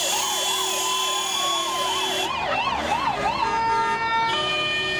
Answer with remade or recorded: recorded